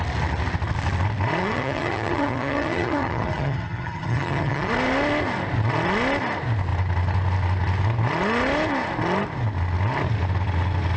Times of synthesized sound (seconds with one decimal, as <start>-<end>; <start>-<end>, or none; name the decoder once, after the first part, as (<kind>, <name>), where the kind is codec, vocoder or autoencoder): 1.4-4.7 (vocoder, HiFi-GAN)